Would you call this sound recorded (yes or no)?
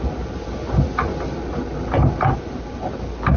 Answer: yes